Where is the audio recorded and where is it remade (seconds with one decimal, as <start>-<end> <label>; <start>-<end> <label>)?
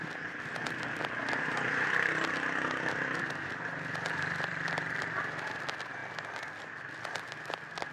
0.0-6.0 remade; 6.0-6.6 recorded; 6.6-7.9 remade